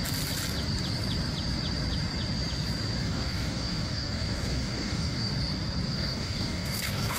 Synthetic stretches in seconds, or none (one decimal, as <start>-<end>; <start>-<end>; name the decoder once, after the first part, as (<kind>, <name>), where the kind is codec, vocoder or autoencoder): 3.0-5.3 (codec, DAC); 5.9-7.2